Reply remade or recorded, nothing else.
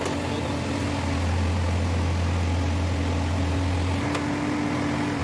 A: recorded